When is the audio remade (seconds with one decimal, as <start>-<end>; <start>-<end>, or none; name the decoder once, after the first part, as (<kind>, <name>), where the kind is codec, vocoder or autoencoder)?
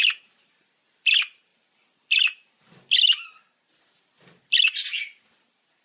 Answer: none